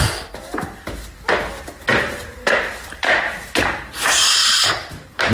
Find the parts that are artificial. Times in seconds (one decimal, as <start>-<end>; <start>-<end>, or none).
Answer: 1.9-3.2; 4.4-5.3